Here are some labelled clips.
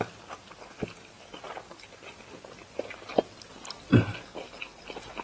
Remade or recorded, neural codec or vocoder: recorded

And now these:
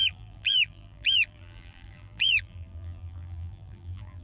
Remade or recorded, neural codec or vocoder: remade, vocoder, BigVGAN v2